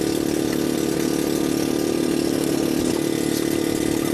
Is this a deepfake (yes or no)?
no